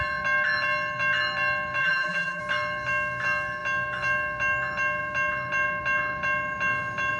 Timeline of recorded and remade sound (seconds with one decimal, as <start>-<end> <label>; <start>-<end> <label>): 0.0-1.8 recorded; 1.8-2.4 remade; 2.4-7.2 recorded